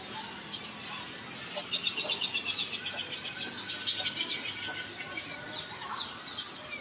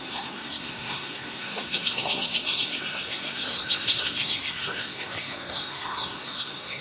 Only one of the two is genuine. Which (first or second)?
first